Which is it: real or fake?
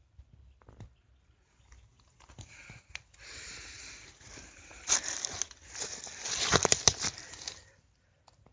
real